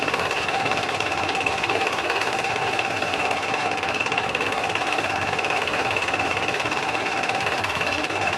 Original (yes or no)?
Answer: no